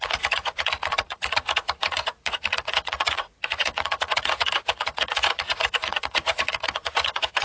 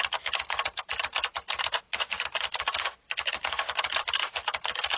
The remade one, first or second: first